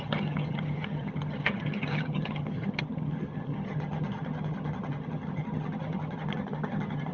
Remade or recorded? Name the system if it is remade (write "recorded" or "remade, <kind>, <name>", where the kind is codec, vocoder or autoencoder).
remade, vocoder, HiFi-GAN